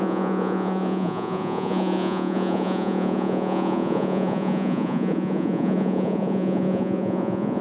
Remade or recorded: remade